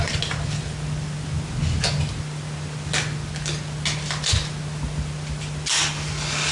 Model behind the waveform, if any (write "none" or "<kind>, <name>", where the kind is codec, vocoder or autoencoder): none